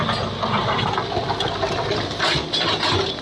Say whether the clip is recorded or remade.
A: recorded